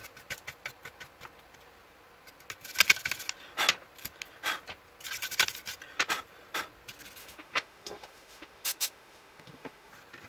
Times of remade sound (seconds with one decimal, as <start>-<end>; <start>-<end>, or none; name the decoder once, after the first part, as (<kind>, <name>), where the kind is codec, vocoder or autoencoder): 7.2-9.9 (autoencoder, DAC-VAE)

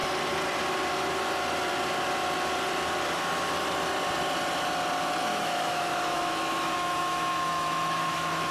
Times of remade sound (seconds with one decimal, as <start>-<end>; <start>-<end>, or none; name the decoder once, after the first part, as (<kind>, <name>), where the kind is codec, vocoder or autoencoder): 5.3-8.5 (autoencoder, DAC-VAE)

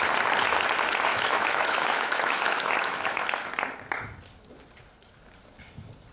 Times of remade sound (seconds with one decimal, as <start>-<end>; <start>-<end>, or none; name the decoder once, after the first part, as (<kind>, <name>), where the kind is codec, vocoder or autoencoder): 1.1-3.2 (autoencoder, DAC-VAE)

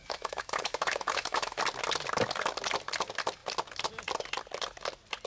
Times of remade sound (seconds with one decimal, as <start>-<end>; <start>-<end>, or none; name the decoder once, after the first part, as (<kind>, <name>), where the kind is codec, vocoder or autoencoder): 0.0-1.6 (autoencoder, DAC-VAE)